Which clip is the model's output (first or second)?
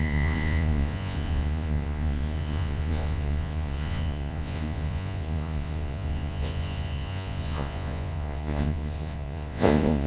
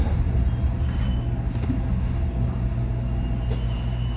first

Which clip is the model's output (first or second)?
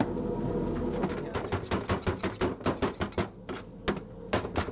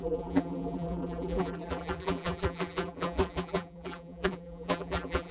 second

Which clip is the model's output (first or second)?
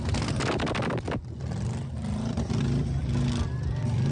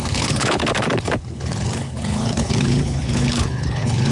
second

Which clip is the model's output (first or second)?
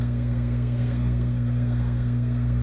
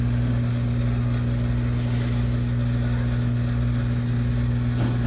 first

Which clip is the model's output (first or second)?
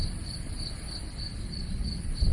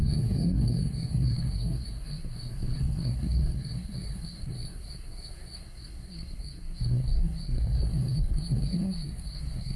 second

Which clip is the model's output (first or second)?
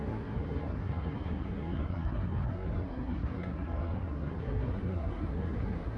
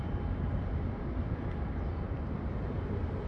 first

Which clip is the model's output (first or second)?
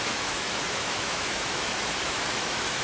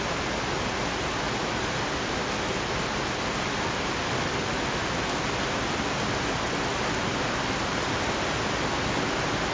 first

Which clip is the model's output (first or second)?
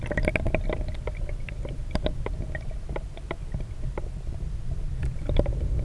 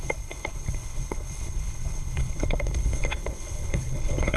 second